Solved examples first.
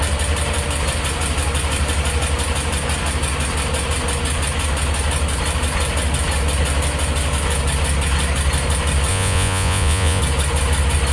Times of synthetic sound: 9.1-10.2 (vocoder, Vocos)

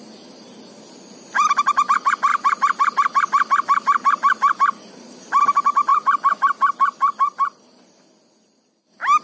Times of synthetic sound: none

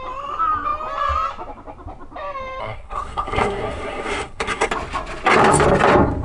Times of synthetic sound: 2.6-4.7 (codec, SNAC)

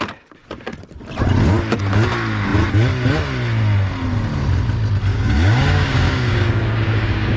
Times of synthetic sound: 5.1-7.4 (codec, DAC)